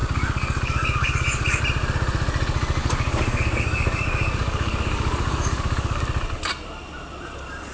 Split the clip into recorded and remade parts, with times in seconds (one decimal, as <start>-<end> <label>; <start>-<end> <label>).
0.0-1.6 remade; 1.6-2.8 recorded; 2.8-6.0 remade; 6.0-7.7 recorded